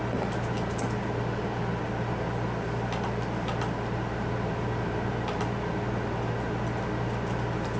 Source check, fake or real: real